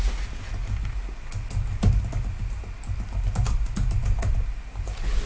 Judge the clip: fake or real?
real